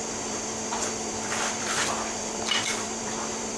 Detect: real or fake fake